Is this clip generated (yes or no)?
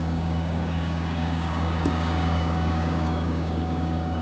yes